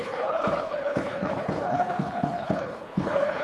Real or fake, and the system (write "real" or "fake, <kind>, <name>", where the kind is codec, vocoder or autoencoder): fake, codec, HILCodec